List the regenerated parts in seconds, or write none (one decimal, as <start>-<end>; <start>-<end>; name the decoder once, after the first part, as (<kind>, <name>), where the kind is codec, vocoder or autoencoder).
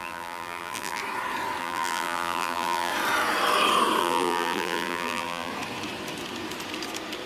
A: 0.0-1.0 (vocoder, BigVGAN v2); 1.6-2.9; 4.0-5.5